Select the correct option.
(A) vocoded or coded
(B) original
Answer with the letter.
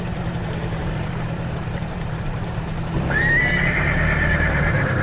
A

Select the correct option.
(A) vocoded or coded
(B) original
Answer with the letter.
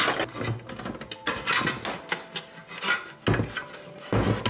B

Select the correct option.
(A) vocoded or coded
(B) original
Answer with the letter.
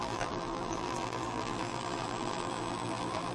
A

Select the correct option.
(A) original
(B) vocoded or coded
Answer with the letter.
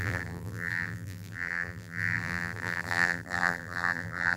B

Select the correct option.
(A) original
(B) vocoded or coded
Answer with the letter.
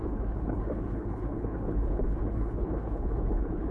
B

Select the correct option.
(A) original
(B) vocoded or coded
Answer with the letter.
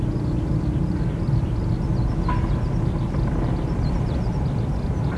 A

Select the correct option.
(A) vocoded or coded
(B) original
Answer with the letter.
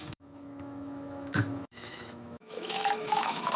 A